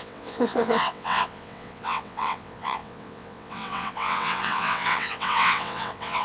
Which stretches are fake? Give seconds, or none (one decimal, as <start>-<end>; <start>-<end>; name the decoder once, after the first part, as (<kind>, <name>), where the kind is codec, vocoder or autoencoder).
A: 0.0-6.2 (vocoder, WaveNeXt)